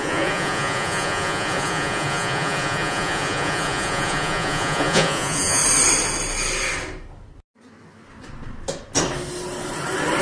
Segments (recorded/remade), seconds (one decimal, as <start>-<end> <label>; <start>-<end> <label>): 0.0-5.6 remade; 5.6-10.2 recorded